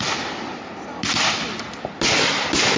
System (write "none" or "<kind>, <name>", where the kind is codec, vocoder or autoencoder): none